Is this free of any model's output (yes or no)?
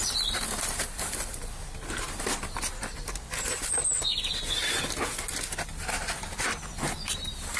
yes